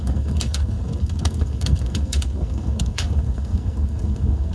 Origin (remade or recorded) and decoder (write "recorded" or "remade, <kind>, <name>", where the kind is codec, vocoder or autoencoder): remade, codec, SNAC